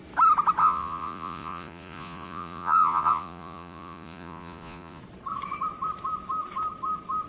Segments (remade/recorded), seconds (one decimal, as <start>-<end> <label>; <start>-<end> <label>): 0.0-0.6 recorded; 0.6-5.0 remade; 5.0-7.3 recorded